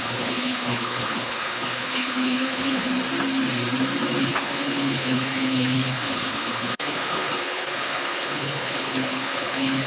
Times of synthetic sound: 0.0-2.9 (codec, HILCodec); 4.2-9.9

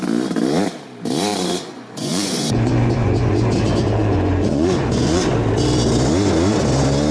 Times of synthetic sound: 1.3-5.2 (vocoder, Vocos)

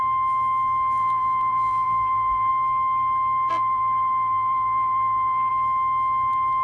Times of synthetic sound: 1.0-2.5 (vocoder, BigVGAN v2); 3.5-5.5